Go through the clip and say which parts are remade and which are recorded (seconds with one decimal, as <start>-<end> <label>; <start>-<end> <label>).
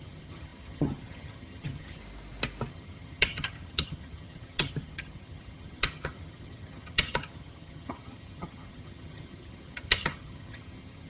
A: 0.0-2.0 remade; 2.0-2.7 recorded; 2.7-11.1 remade